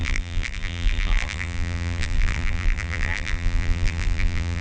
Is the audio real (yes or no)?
no